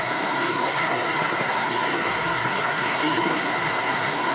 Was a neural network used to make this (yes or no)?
yes